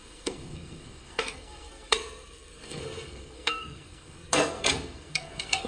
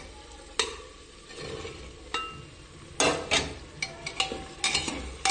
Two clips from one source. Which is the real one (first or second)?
second